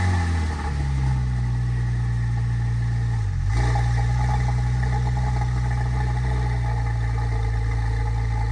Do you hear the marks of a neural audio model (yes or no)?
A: no